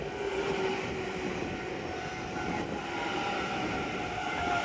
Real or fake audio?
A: real